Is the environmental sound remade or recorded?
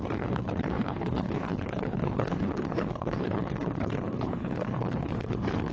remade